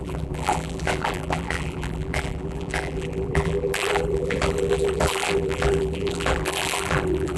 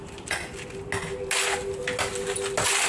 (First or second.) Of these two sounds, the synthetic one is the first